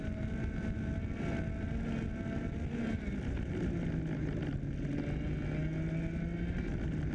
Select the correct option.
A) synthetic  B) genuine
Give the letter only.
B